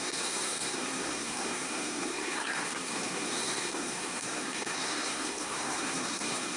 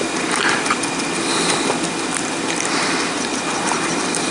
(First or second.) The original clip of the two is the second